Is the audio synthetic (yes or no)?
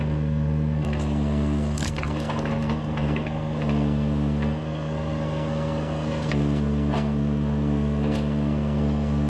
yes